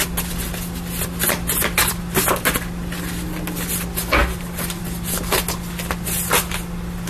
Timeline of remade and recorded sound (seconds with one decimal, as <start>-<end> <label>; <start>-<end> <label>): 0.0-7.1 recorded